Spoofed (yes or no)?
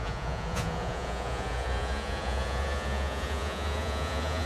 yes